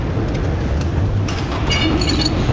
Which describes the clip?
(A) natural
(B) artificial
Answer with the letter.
A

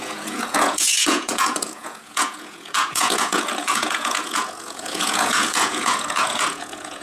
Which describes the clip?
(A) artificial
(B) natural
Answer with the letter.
A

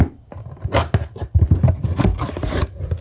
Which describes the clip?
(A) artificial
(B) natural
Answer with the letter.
B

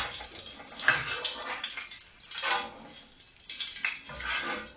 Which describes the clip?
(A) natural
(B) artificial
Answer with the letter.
A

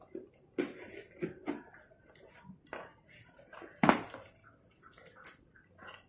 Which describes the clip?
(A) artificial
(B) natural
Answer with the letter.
B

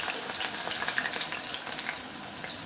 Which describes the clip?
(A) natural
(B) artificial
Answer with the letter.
A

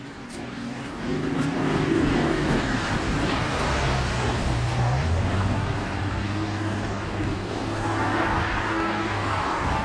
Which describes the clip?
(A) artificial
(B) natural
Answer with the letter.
A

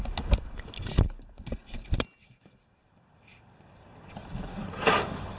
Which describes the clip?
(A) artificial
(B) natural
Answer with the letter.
B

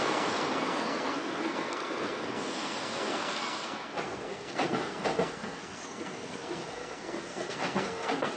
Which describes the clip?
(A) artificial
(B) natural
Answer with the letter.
A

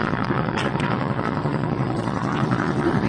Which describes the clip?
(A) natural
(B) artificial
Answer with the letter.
B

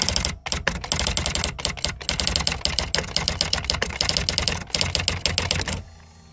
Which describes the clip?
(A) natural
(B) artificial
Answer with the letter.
A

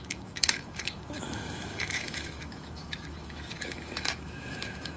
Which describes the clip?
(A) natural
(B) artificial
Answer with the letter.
B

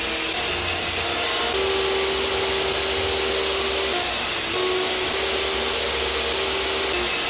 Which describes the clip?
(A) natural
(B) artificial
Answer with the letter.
A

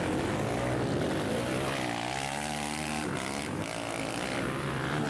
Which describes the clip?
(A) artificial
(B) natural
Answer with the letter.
B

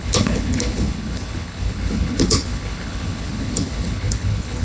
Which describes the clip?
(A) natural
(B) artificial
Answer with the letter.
B